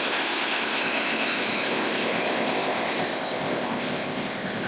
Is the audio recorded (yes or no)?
no